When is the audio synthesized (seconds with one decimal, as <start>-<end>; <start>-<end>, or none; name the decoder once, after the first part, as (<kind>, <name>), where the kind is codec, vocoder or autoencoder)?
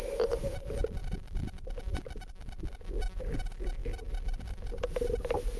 none